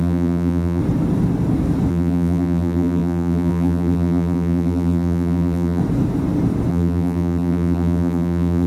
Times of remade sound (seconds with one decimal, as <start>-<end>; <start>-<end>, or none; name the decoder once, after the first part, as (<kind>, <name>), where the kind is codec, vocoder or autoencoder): 0.0-0.8 (vocoder, BigVGAN v2); 1.9-5.8; 6.7-8.7